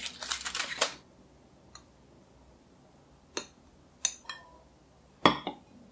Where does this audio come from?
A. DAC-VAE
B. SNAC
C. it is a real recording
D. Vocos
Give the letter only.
C